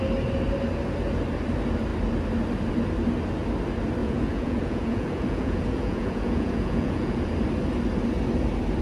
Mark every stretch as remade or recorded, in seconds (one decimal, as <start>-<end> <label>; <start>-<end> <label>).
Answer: 0.0-4.0 recorded; 4.0-7.3 remade; 7.3-8.8 recorded